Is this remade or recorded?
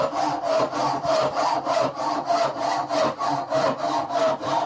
recorded